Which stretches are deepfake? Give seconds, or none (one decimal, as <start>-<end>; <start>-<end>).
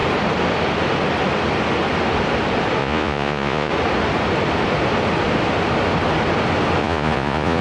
2.8-3.7; 6.8-7.6